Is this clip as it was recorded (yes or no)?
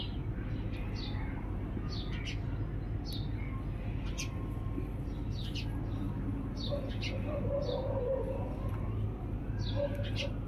yes